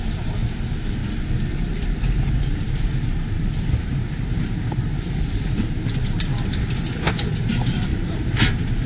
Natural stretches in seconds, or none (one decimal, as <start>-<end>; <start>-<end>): 6.3-7.5